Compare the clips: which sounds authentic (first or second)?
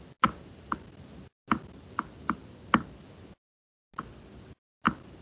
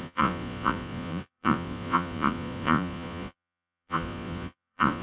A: first